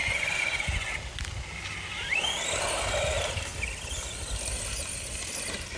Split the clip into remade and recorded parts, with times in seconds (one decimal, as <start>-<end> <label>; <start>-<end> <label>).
0.0-0.9 remade; 0.9-5.8 recorded